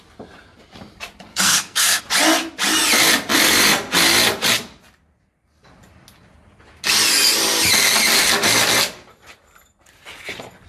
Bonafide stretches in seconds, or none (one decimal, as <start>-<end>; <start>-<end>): 0.0-1.3; 2.0-10.7